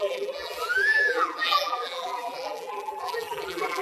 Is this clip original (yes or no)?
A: no